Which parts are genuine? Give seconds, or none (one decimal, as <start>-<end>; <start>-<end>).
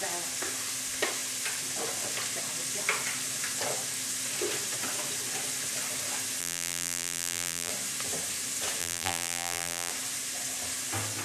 0.0-6.4; 7.7-8.8; 9.9-11.2